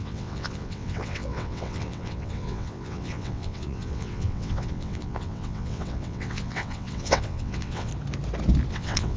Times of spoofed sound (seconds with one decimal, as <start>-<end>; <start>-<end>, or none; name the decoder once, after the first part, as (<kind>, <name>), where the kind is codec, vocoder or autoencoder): 0.0-7.9 (vocoder, WaveNeXt); 8.7-9.2